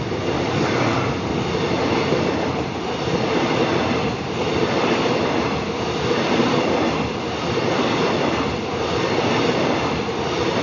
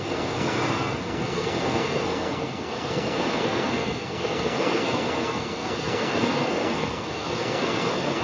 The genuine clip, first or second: first